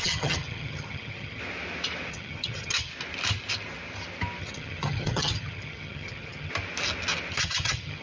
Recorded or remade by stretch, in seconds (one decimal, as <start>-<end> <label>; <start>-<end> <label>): 0.0-1.4 remade; 1.4-2.1 recorded; 2.1-2.9 remade; 2.9-4.4 recorded; 4.4-6.5 remade; 6.5-7.3 recorded; 7.3-8.0 remade